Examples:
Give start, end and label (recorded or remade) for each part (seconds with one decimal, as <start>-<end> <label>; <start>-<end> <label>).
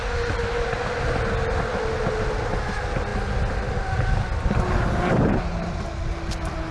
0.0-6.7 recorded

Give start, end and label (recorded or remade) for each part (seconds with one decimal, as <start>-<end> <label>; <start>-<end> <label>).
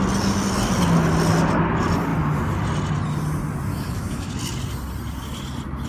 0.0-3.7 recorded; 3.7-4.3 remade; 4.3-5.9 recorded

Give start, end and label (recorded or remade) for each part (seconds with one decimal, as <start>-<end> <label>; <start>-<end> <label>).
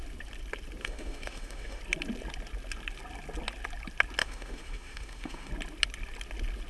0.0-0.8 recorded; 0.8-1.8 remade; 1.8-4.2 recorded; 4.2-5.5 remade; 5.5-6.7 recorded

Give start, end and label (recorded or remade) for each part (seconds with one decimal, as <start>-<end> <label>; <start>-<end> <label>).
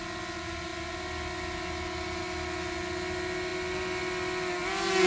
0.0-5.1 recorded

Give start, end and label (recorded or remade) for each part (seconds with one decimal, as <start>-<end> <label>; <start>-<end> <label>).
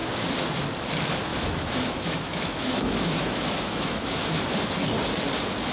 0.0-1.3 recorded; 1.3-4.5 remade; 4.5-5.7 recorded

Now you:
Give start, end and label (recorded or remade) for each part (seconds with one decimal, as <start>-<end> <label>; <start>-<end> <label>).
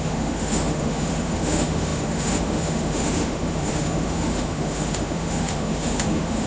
0.0-6.5 remade